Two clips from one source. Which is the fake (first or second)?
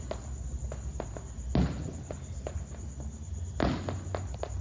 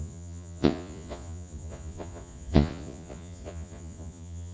second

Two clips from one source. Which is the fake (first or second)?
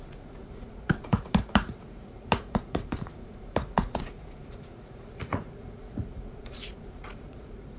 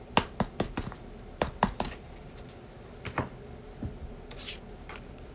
first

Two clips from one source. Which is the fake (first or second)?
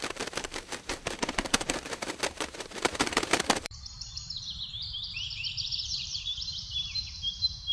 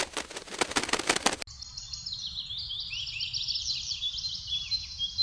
first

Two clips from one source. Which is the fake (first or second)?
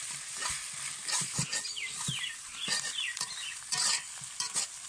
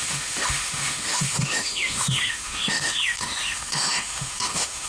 second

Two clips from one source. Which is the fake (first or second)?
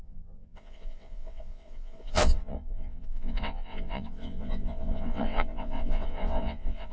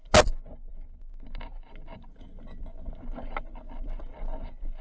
first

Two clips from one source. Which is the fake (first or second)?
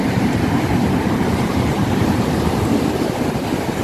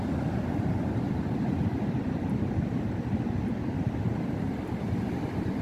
first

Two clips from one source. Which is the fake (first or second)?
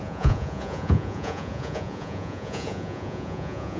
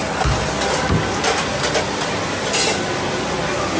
first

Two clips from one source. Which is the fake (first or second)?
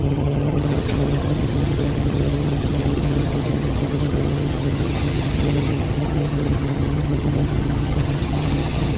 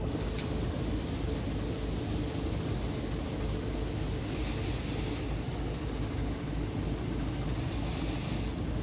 first